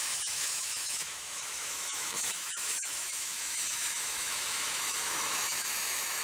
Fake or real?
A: fake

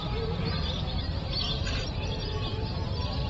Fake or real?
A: real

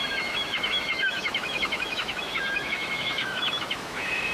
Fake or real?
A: fake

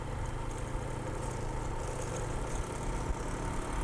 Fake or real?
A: real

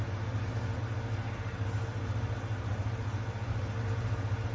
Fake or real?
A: real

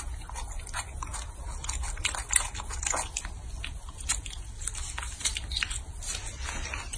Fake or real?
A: real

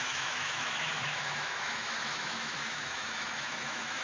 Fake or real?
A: fake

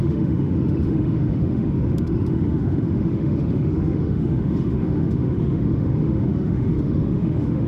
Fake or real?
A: fake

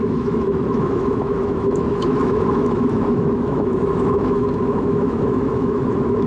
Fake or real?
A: fake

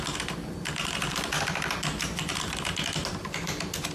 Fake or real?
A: real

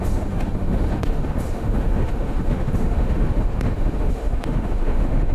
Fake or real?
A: fake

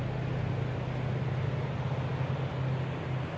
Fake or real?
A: real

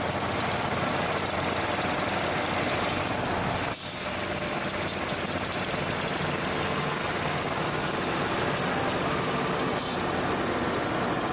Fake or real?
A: real